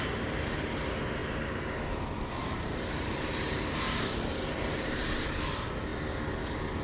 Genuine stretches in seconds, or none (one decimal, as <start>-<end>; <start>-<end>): 0.0-1.2; 1.7-2.4; 5.3-6.8